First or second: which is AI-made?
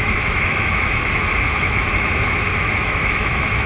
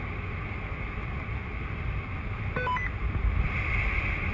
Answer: first